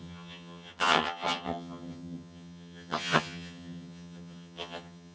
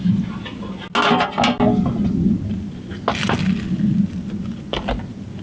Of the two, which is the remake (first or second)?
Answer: first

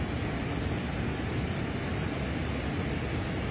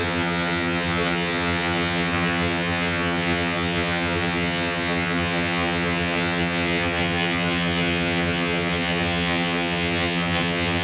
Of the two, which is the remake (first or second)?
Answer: second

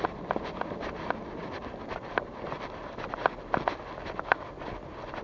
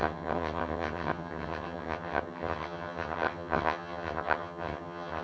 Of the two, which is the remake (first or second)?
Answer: second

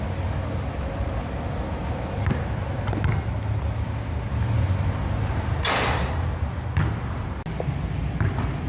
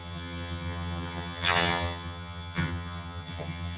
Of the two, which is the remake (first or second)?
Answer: second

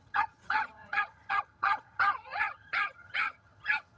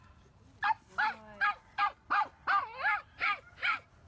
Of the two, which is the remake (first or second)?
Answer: first